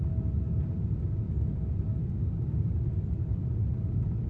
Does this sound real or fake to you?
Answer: real